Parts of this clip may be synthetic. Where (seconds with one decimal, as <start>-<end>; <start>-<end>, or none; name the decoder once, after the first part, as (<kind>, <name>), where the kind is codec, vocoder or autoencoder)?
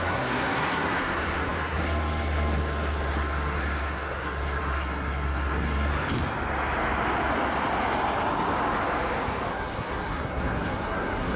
0.0-5.9 (codec, SNAC); 9.5-11.4